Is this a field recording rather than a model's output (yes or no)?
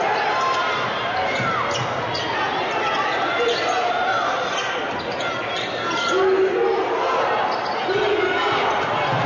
yes